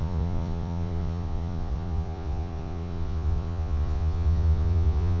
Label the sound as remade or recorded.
remade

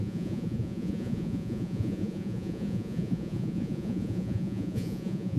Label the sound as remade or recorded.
remade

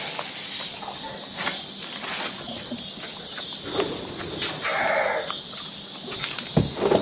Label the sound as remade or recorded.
recorded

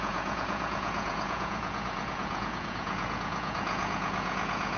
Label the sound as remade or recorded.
remade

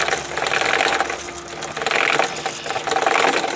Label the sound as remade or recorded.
recorded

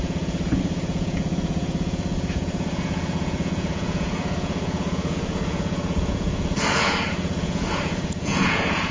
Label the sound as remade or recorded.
remade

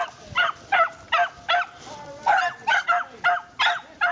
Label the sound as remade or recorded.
recorded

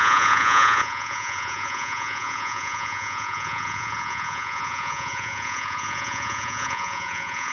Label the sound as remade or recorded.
remade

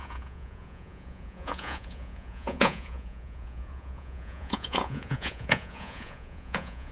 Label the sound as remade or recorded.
remade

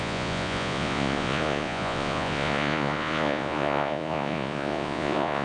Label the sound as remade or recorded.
remade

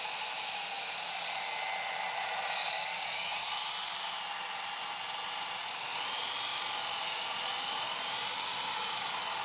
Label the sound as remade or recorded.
recorded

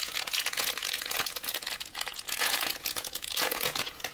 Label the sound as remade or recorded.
remade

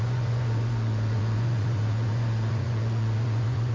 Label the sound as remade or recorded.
remade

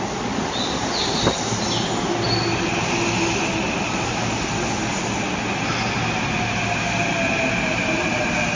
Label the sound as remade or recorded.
recorded